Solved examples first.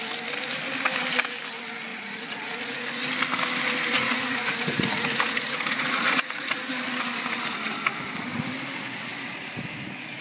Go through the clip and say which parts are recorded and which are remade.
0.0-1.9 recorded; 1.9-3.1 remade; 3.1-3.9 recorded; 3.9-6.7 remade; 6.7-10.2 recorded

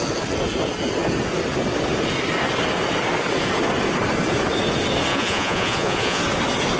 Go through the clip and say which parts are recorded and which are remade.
0.0-5.1 recorded; 5.1-6.2 remade; 6.2-6.8 recorded

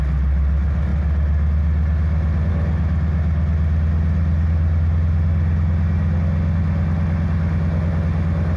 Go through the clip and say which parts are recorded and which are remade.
0.0-8.6 recorded